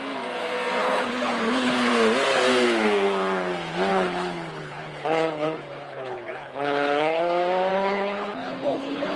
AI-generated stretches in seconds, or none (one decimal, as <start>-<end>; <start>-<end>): 0.8-1.9; 3.9-7.2; 7.7-9.2